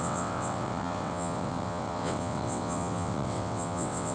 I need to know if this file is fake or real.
fake